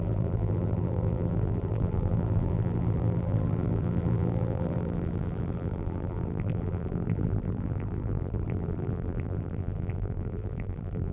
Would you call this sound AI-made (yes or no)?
yes